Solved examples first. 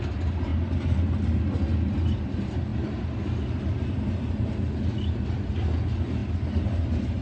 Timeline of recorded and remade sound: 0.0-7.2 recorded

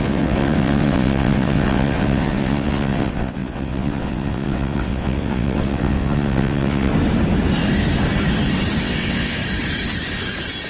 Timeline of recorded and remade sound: 0.0-6.9 remade; 6.9-8.8 recorded; 8.8-9.4 remade; 9.4-10.7 recorded

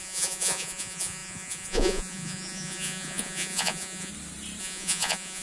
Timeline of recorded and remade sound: 0.0-4.1 remade; 4.1-4.6 recorded; 4.6-5.4 remade

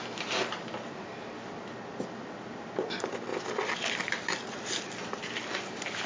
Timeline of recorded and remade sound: 0.0-6.1 recorded

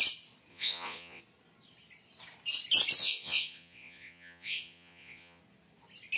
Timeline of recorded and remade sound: 0.0-0.5 recorded; 0.5-1.2 remade; 1.2-3.0 recorded; 3.0-5.4 remade; 5.4-6.2 recorded

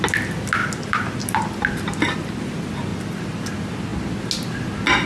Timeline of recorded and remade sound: 0.0-0.6 recorded; 0.6-2.4 remade; 2.4-2.9 recorded; 2.9-3.5 remade; 3.5-5.1 recorded